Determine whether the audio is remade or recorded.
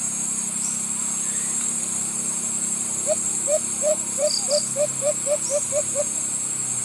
remade